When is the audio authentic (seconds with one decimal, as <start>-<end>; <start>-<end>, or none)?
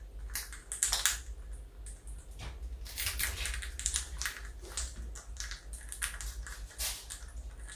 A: 0.0-7.8